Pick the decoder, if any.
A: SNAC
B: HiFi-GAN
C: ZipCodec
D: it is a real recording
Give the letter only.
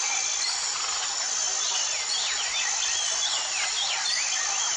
D